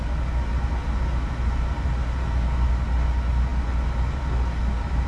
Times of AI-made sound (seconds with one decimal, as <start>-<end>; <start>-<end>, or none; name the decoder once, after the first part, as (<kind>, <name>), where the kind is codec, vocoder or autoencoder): none

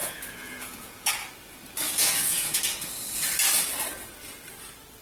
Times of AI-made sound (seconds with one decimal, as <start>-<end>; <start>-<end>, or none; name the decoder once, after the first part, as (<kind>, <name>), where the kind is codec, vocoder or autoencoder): 0.0-1.1 (vocoder, Vocos); 2.0-2.6

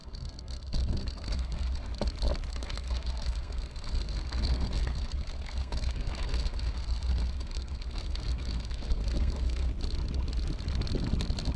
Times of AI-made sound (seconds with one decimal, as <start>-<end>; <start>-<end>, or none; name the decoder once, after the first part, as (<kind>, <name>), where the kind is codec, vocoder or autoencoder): 0.0-1.9 (codec, SNAC); 2.5-9.7

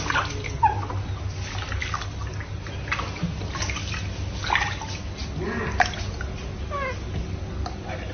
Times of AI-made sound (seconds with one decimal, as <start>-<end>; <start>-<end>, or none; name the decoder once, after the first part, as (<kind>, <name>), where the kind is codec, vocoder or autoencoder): none

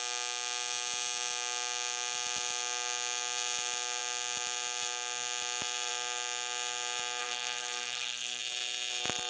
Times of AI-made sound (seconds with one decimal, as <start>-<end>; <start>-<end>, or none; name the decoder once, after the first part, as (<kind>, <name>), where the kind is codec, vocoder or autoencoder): 7.2-8.4 (codec, SNAC)

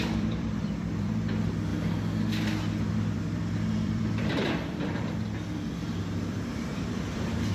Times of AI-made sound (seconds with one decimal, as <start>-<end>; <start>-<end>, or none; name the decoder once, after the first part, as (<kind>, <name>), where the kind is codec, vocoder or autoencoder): 0.0-1.7 (vocoder, BigVGAN v2); 2.9-7.5

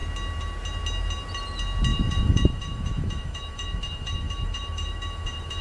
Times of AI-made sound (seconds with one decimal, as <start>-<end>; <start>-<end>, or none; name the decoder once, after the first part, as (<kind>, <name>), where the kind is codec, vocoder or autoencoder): 1.9-5.6 (autoencoder, DAC-VAE)

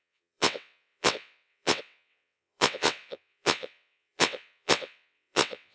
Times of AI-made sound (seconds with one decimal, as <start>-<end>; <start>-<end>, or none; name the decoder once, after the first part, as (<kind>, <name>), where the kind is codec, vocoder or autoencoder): 0.0-5.7 (vocoder, WaveNeXt)